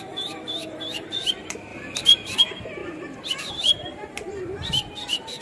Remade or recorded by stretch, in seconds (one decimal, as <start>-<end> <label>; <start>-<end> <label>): 0.0-2.8 remade; 2.8-3.5 recorded; 3.5-5.4 remade